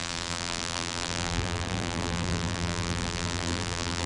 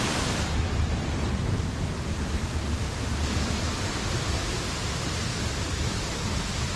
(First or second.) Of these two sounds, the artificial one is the first